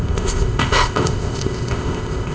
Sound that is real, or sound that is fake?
fake